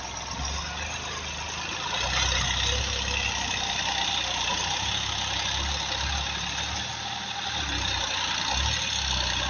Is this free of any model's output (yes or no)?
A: yes